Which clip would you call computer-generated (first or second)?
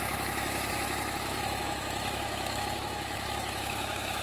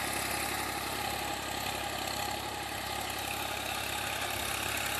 first